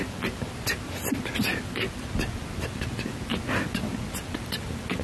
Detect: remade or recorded recorded